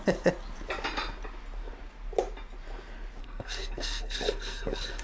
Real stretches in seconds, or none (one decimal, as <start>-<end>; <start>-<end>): 0.0-3.2